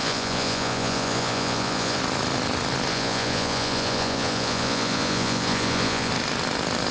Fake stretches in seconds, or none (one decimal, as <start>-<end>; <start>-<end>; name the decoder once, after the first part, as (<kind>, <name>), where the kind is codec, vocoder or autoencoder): 0.0-2.0 (vocoder, Vocos); 2.9-6.1